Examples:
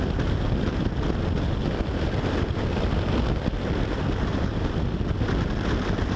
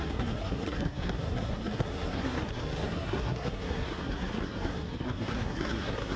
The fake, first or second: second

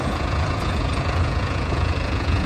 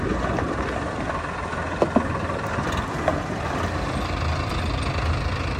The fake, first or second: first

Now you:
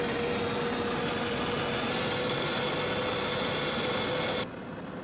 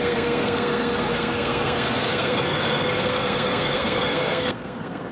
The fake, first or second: second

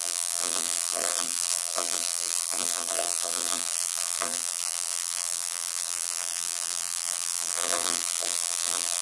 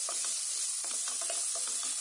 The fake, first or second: first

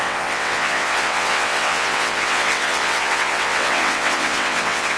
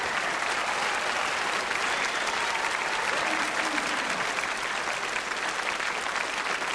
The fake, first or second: first